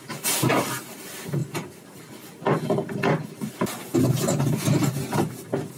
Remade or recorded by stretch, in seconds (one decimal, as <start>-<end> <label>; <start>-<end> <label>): 0.0-5.8 recorded